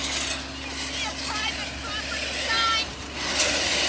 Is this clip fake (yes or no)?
no